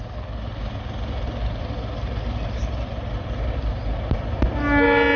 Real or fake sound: real